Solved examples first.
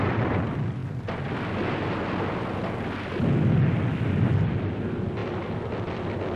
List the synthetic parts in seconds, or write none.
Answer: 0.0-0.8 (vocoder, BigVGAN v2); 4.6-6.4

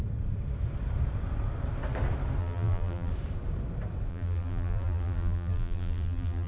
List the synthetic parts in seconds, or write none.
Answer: 2.4-3.1 (vocoder, BigVGAN v2); 4.1-6.5

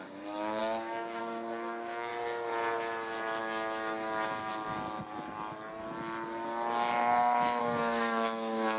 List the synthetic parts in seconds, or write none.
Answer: 0.0-2.1 (codec, DAC); 3.4-4.5; 7.6-8.8

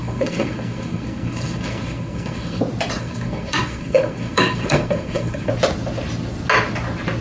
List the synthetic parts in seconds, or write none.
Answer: 0.0-2.6 (codec, SNAC); 3.0-5.5

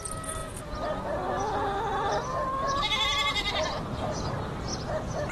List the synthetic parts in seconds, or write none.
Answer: 0.4-2.8 (vocoder, BigVGAN v2)

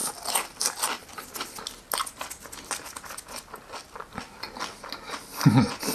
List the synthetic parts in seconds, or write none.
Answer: none